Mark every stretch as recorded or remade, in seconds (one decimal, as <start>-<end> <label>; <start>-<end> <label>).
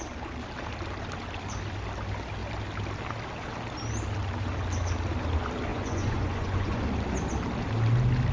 0.0-5.7 recorded; 5.7-6.8 remade; 6.8-8.3 recorded